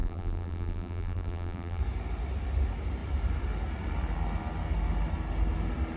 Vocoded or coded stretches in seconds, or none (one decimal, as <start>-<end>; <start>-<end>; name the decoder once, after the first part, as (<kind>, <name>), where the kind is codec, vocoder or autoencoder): 0.0-1.8 (vocoder, BigVGAN v2)